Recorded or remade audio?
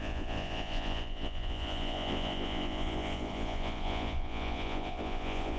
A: remade